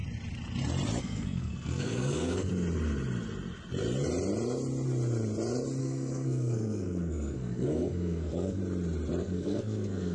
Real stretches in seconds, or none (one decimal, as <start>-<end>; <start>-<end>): 0.0-1.0; 2.5-5.8; 8.6-9.2